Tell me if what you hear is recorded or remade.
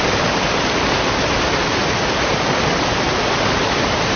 recorded